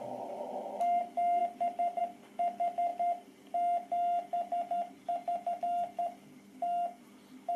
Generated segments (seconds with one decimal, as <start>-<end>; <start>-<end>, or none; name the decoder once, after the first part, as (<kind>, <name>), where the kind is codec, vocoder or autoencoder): none

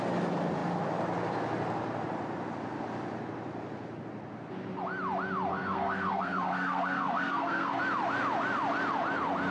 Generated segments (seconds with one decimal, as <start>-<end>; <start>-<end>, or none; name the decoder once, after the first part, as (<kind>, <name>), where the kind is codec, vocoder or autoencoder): 5.5-7.8 (codec, SNAC)